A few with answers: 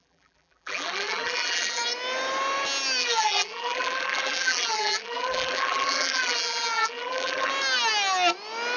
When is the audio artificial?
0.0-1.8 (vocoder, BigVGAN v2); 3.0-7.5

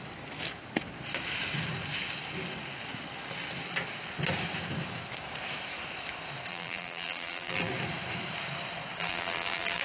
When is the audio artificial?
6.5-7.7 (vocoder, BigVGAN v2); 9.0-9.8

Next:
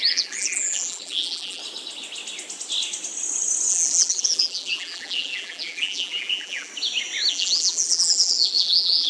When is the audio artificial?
0.0-1.6 (vocoder, BigVGAN v2); 3.7-6.7; 7.3-9.1